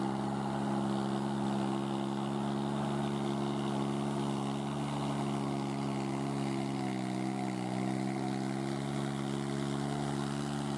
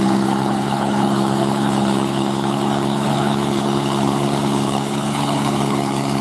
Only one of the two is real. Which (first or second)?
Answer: first